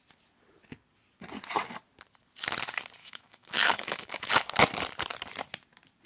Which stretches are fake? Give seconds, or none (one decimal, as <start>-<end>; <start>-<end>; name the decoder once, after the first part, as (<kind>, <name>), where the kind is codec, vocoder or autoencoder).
3.0-4.3 (autoencoder, DAC-VAE)